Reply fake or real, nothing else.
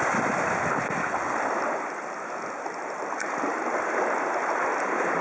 real